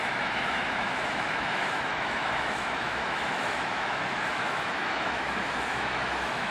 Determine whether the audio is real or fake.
fake